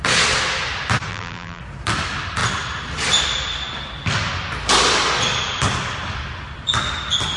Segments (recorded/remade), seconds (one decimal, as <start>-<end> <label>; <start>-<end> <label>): 0.0-1.1 recorded; 1.1-1.6 remade; 1.6-7.4 recorded